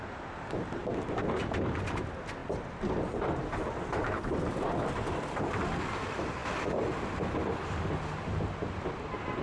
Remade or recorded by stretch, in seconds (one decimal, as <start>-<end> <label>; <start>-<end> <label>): 0.0-9.4 recorded